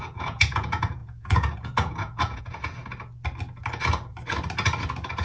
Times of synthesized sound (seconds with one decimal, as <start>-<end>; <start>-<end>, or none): 0.0-2.8